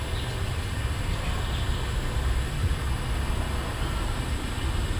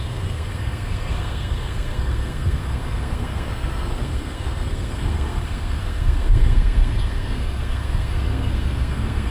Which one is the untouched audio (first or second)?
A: first